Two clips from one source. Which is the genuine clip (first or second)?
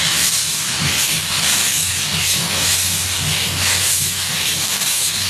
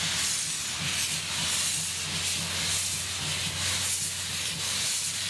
second